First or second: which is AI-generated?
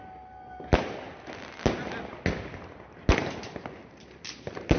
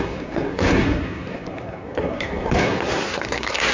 second